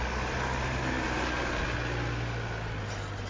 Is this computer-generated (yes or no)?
no